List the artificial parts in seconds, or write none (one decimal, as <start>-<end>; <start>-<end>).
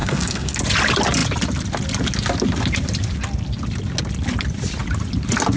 0.0-0.6